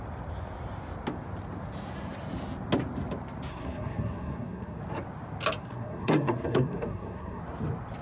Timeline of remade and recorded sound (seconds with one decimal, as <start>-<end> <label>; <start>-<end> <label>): 0.0-3.5 recorded; 3.5-4.8 remade; 4.8-5.6 recorded; 5.6-7.4 remade; 7.4-8.0 recorded